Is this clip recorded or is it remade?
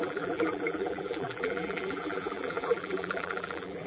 remade